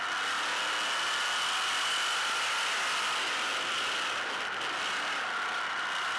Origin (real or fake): real